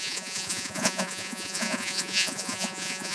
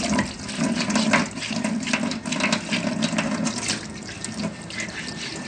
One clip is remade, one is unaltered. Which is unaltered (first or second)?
second